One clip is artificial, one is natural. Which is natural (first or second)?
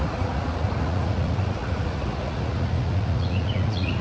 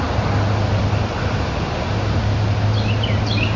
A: second